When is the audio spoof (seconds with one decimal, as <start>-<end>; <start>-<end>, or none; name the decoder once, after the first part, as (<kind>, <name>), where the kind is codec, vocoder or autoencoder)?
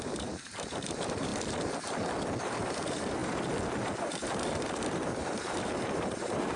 0.0-1.3 (vocoder, BigVGAN v2); 2.4-3.2; 4.9-6.6